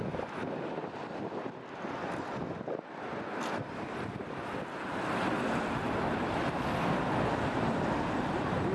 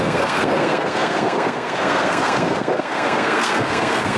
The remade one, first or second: second